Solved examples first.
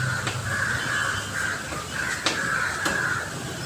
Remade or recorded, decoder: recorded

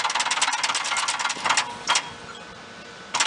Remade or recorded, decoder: recorded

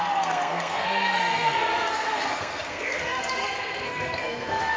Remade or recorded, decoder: remade, codec, SNAC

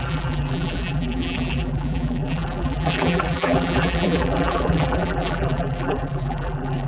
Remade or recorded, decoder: remade, vocoder, BigVGAN v2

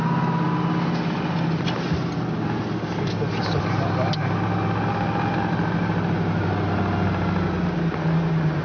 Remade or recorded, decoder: recorded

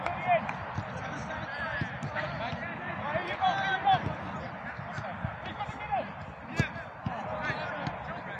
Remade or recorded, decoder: recorded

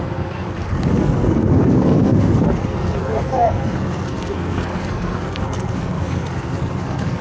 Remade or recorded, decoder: remade, codec, SNAC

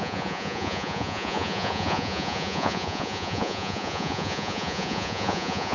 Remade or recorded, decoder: remade, vocoder, Vocos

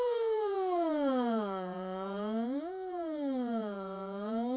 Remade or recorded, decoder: remade, vocoder, Vocos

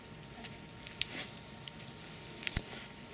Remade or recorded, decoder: recorded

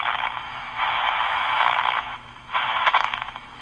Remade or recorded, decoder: remade, autoencoder, DAC-VAE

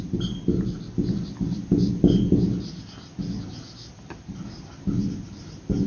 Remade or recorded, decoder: recorded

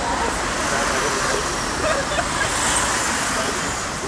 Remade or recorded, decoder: recorded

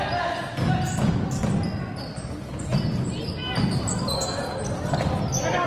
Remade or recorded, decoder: recorded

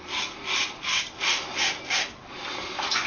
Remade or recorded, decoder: recorded